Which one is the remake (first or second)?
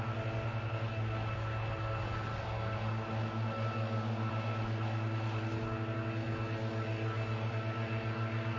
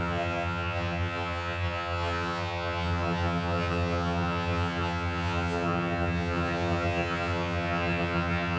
second